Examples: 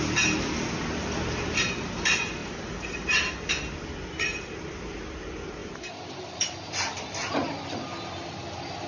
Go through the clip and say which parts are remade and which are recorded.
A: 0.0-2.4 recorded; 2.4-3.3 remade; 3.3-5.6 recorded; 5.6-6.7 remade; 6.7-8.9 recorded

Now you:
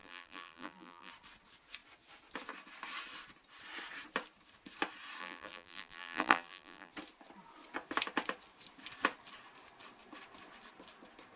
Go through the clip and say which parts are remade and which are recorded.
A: 0.0-1.1 remade; 1.1-5.2 recorded; 5.2-6.9 remade; 6.9-11.4 recorded